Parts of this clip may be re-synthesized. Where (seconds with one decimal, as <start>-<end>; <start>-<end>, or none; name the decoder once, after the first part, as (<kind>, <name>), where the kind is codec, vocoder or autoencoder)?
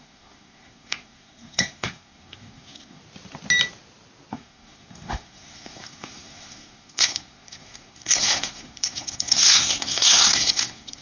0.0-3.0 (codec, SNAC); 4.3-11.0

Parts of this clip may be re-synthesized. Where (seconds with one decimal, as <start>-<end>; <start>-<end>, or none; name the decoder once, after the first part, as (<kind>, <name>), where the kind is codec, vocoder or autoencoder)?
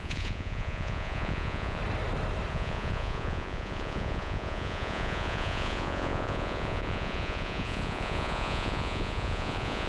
0.0-1.8 (vocoder, Vocos); 2.5-9.9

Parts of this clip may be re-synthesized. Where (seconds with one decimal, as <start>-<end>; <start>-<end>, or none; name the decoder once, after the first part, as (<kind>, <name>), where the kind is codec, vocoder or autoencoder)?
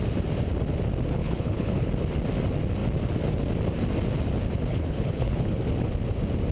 1.2-1.9 (codec, HILCodec); 4.7-5.6